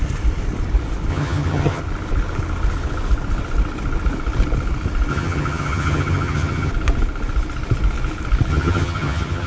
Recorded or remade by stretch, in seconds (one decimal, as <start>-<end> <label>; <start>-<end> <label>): 0.0-1.1 recorded; 1.1-1.8 remade; 1.8-5.1 recorded; 5.1-6.7 remade; 6.7-8.5 recorded; 8.5-9.5 remade